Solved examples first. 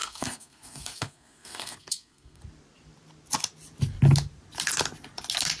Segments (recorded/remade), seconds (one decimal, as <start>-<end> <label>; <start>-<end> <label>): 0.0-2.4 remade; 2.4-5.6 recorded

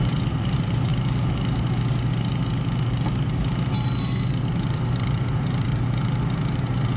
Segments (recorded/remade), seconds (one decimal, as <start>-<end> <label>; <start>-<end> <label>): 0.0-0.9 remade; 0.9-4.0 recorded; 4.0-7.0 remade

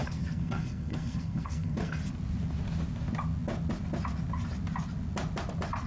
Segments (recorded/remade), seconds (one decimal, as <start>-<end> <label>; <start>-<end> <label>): 0.0-2.0 remade; 2.0-5.9 recorded

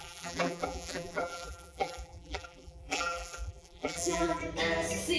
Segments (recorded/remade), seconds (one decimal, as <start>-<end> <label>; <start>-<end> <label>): 0.0-4.4 remade; 4.4-5.2 recorded